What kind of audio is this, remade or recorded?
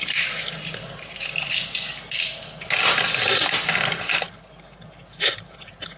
recorded